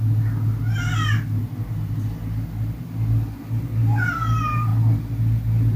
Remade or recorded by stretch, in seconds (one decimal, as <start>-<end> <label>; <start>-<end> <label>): 0.0-5.8 recorded